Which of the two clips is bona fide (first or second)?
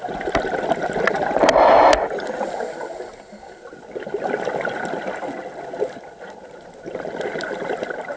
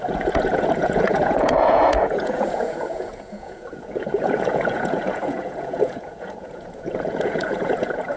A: first